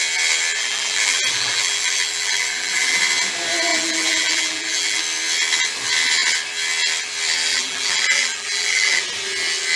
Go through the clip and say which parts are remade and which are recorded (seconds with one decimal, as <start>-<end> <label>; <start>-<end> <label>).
0.0-0.6 recorded; 0.6-3.0 remade; 3.0-3.7 recorded; 3.7-5.0 remade; 5.0-7.5 recorded; 7.5-9.0 remade; 9.0-9.8 recorded